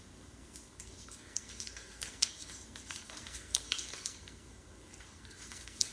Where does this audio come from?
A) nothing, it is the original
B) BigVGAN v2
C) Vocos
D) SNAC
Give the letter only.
D